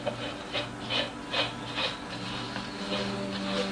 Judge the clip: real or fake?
real